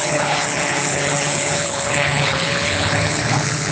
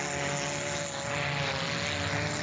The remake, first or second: first